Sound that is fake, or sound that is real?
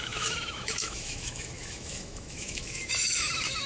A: fake